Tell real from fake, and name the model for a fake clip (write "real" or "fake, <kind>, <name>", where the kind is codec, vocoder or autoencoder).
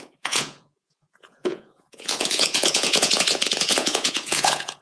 fake, vocoder, Vocos